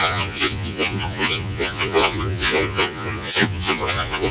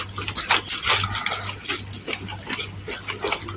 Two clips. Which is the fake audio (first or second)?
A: first